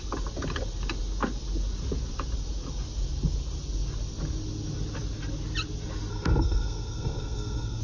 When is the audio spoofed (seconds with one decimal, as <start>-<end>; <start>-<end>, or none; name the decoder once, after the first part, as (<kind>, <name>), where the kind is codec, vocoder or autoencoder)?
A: 6.1-7.8 (codec, SNAC)